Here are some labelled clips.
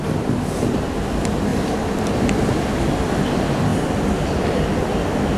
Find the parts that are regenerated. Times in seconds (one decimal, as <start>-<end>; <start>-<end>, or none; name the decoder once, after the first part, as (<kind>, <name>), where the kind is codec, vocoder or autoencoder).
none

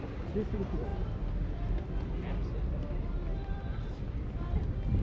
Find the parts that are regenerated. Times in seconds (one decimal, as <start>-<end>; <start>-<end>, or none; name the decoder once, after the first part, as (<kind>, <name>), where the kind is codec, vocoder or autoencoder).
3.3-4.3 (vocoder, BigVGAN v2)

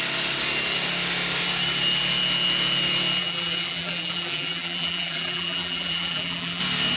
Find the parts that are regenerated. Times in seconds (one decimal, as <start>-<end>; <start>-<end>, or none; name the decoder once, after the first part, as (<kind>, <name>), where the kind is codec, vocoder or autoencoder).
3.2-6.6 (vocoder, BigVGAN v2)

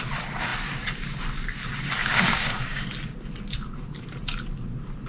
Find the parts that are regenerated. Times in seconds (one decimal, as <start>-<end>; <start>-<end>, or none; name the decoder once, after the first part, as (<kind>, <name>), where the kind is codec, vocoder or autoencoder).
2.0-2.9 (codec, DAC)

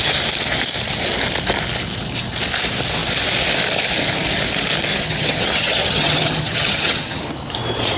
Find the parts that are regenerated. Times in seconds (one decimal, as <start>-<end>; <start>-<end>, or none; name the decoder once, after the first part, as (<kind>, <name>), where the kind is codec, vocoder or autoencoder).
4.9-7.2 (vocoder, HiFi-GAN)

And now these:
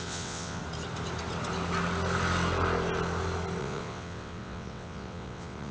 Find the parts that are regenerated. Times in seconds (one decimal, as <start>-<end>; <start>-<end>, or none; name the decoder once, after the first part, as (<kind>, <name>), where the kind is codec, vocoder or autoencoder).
0.0-0.6 (vocoder, WaveNeXt); 3.6-5.7

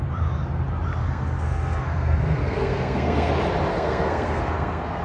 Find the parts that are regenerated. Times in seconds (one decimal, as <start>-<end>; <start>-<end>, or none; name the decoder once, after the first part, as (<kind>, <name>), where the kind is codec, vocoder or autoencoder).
1.0-3.3 (codec, SNAC); 3.7-5.0